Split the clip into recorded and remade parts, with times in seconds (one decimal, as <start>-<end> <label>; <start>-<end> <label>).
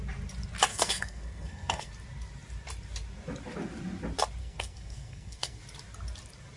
0.0-0.7 recorded; 0.7-1.9 remade; 1.9-4.4 recorded; 4.4-5.6 remade; 5.6-6.6 recorded